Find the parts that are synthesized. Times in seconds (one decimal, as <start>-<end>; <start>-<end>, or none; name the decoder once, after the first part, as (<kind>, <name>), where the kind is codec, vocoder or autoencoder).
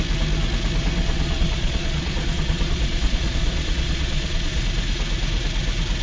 1.0-4.6 (vocoder, Vocos)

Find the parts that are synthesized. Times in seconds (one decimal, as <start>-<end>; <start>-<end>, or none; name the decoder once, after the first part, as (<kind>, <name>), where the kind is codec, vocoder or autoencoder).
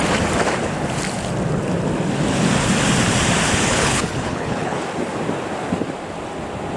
3.7-4.8 (codec, HILCodec)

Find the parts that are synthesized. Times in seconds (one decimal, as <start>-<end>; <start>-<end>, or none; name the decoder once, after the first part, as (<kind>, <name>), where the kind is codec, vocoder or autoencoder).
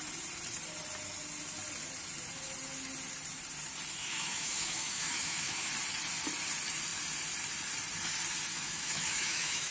4.0-5.7 (autoencoder, DAC-VAE); 8.5-9.7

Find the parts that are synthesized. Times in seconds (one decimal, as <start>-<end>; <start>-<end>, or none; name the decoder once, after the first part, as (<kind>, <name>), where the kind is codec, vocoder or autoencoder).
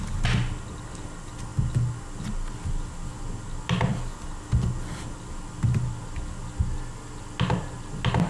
none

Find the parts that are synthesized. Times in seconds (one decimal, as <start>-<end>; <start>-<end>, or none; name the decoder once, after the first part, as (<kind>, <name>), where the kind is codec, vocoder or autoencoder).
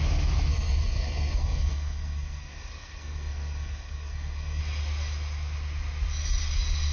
0.5-4.6 (codec, SNAC)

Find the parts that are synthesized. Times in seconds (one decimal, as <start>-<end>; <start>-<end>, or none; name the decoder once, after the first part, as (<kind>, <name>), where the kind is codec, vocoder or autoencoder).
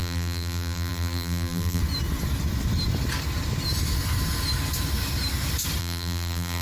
0.0-1.8 (vocoder, BigVGAN v2); 5.8-6.6